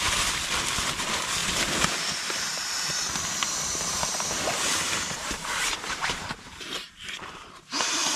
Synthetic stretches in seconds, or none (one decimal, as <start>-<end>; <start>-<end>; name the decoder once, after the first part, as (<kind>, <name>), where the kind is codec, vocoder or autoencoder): 1.4-2.9 (vocoder, BigVGAN v2); 3.7-8.2